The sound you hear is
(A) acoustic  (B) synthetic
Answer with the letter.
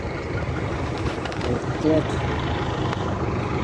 B